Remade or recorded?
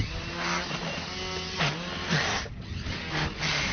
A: recorded